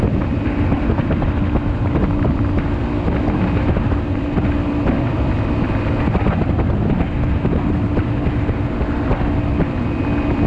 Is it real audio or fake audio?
real